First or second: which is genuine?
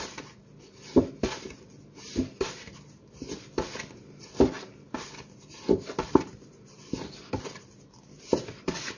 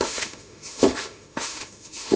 first